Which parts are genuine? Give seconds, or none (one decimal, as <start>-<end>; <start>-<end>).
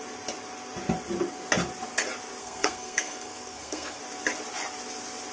0.0-2.4; 4.0-5.3